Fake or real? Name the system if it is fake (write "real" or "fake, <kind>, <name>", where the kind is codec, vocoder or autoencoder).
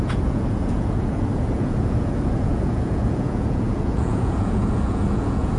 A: fake, vocoder, Vocos